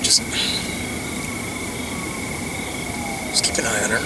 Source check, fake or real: real